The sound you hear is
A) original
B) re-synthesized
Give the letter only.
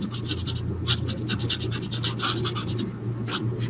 A